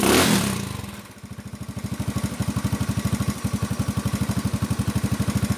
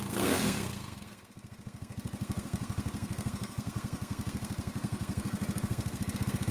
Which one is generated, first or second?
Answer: second